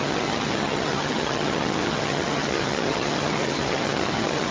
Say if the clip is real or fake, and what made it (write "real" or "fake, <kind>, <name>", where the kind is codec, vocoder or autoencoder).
fake, vocoder, HiFi-GAN